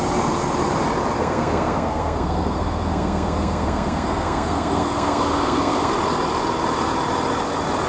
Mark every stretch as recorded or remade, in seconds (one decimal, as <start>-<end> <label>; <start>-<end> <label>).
0.0-1.2 recorded; 1.2-5.9 remade; 5.9-7.9 recorded